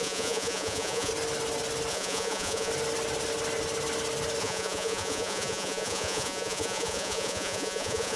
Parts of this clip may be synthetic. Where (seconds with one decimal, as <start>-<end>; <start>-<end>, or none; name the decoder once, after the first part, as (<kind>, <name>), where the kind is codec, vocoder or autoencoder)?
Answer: 0.0-1.1 (vocoder, Vocos); 1.9-2.7; 4.4-8.2